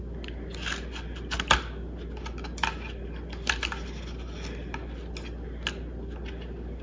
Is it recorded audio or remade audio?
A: recorded